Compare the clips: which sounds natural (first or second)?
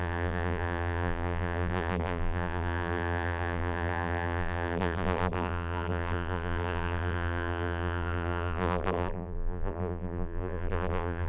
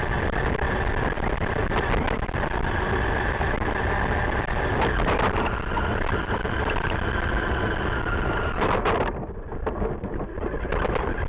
second